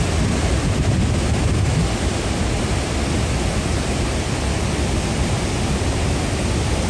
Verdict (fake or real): real